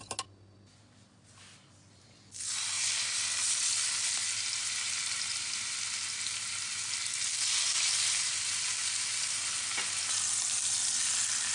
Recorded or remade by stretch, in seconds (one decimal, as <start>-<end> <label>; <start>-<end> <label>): 0.0-11.5 recorded